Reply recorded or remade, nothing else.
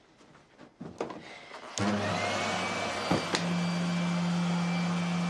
recorded